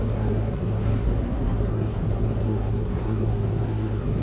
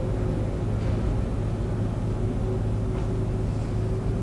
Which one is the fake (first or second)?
first